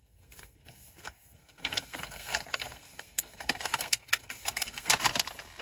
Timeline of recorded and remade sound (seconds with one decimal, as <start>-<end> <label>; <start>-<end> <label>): 0.0-4.9 remade; 4.9-5.6 recorded